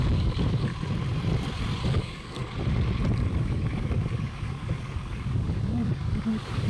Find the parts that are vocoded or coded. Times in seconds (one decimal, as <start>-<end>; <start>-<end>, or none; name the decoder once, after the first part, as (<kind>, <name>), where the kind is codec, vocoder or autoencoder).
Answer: 0.0-0.7 (codec, DAC); 1.9-2.4; 3.4-6.7

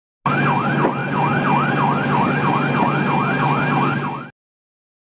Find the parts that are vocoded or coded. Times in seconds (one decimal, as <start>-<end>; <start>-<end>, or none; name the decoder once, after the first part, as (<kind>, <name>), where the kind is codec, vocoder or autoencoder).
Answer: none

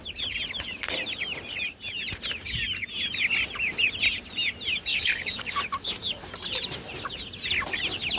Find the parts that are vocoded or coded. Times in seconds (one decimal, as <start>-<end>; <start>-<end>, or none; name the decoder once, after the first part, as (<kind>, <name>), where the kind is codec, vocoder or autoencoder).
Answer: 4.9-5.6 (codec, DAC)

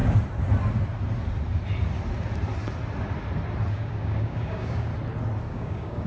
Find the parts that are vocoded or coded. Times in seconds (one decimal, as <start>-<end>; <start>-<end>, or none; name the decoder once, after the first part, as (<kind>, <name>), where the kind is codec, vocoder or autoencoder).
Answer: 3.7-4.9 (codec, DAC); 5.5-6.1

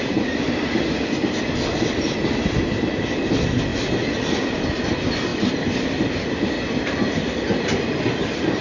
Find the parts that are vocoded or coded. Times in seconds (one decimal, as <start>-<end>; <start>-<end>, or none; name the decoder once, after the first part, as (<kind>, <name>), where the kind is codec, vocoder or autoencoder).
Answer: none